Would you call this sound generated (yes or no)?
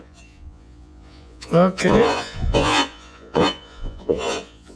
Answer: yes